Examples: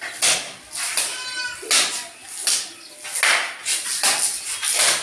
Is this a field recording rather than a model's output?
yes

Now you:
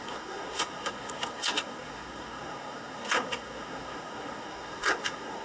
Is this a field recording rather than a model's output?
no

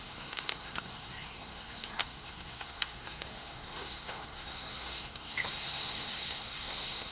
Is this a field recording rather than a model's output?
no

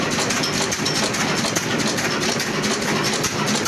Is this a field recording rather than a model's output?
yes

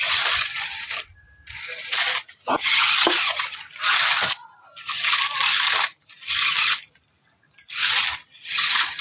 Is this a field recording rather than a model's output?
yes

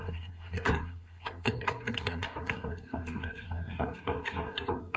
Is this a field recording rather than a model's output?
no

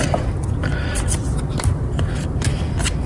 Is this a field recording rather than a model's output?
yes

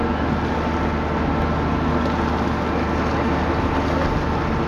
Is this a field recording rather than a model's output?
yes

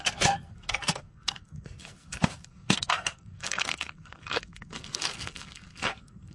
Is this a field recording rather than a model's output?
no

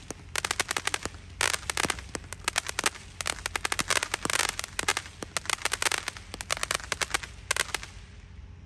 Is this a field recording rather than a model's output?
yes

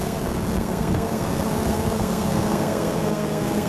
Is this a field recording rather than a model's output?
no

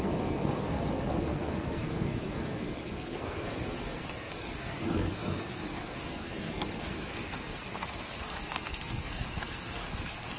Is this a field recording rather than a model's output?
no